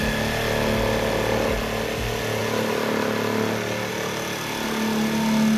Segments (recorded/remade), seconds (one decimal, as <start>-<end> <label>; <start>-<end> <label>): 0.0-5.6 recorded